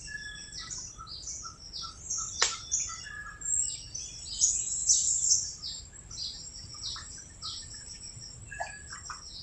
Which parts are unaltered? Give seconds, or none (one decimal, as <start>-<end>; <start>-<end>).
0.0-4.8; 8.0-9.4